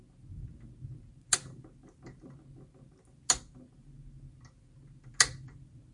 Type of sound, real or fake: real